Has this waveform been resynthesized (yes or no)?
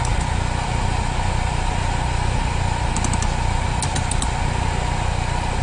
no